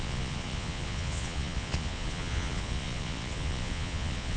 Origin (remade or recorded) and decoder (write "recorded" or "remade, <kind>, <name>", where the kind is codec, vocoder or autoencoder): remade, vocoder, Vocos